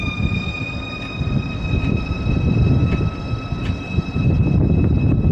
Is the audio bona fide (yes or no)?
yes